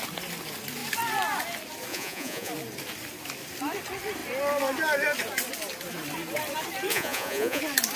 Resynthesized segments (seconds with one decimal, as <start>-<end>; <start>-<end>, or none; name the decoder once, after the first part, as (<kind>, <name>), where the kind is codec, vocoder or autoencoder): 1.9-2.5 (vocoder, Vocos); 6.9-7.6